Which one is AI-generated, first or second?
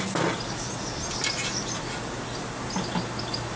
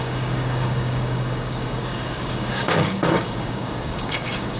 second